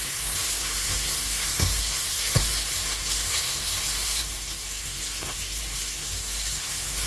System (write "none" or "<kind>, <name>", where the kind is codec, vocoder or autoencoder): codec, SNAC